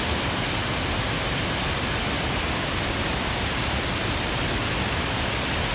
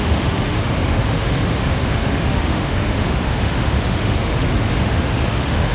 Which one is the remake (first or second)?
second